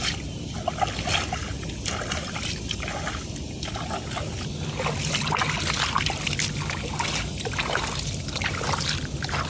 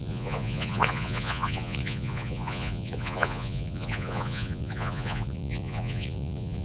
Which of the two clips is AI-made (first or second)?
second